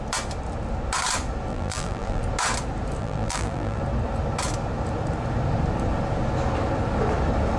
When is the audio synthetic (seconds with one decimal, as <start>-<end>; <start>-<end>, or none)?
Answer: 1.5-2.2; 3.0-3.8

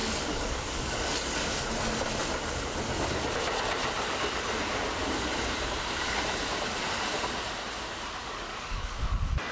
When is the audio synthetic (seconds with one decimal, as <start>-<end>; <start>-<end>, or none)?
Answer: 0.0-1.6; 8.2-8.9